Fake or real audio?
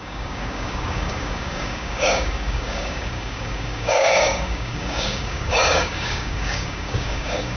fake